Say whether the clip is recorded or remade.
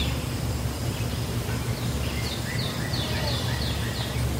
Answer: recorded